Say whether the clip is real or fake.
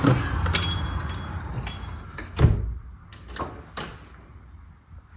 real